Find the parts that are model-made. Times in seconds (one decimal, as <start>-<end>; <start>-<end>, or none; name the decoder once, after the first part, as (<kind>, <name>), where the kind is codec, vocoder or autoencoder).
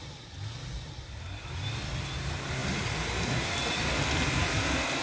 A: none